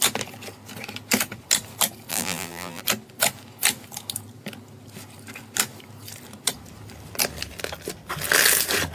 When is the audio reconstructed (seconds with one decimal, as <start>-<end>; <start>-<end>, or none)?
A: 2.1-2.8